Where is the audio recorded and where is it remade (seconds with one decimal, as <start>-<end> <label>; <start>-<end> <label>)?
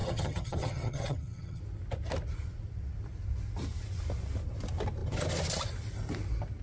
0.0-1.6 remade; 1.6-6.6 recorded